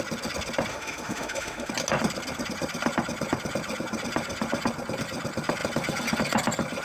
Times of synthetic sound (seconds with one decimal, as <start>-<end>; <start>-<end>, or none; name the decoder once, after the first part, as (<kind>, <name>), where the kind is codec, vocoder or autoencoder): 0.7-1.7 (autoencoder, DAC-VAE)